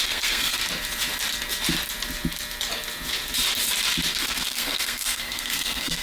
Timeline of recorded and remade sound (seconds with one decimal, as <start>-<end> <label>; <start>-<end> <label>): 0.0-0.6 remade; 0.6-4.2 recorded; 4.2-6.0 remade